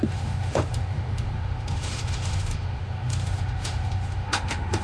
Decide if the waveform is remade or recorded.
remade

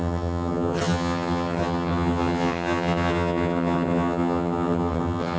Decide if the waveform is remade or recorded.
remade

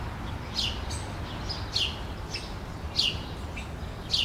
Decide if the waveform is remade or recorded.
recorded